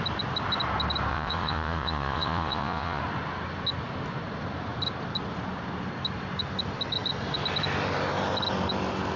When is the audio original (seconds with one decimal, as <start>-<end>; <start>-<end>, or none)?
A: 0.0-1.1; 3.0-9.2